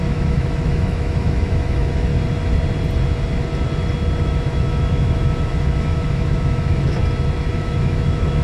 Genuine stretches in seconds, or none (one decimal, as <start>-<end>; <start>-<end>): 2.1-4.2; 7.0-7.5